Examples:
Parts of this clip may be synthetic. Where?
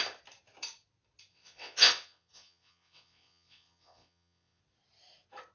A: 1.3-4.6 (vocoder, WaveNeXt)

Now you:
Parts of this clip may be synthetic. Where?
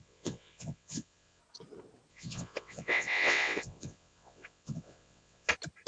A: 0.0-1.4 (vocoder, WaveNeXt); 2.1-5.5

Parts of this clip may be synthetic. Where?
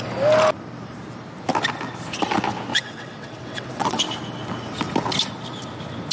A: 2.7-4.0 (vocoder, WaveNeXt)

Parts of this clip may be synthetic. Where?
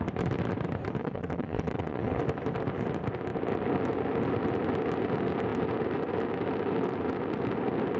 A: 1.0-2.2 (vocoder, WaveNeXt)